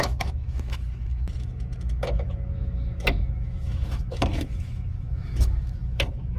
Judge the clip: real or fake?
fake